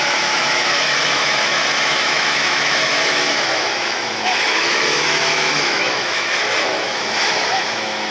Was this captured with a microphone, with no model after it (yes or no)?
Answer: no